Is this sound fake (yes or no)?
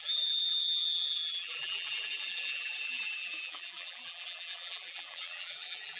yes